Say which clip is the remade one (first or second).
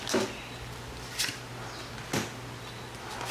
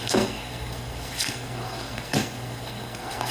second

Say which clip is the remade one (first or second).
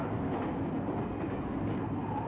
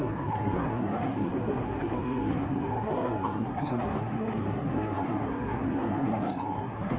second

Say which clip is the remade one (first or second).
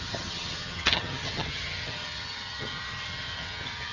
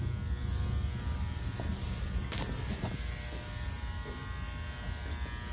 first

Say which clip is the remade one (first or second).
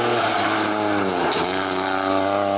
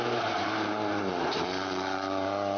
second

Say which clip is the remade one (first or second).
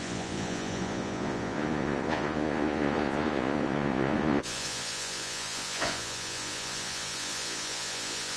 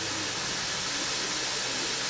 first